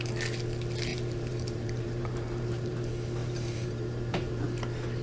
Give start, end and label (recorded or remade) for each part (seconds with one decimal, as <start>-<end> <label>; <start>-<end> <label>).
0.0-0.9 recorded; 0.9-2.8 remade; 2.8-3.2 recorded; 3.2-4.4 remade; 4.4-5.0 recorded